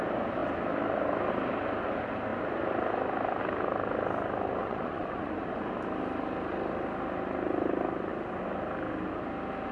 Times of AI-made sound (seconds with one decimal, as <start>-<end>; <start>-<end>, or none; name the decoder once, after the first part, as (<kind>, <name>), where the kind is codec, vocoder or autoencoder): 4.6-5.7 (vocoder, Vocos)